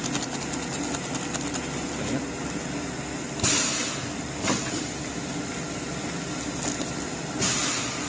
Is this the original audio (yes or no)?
yes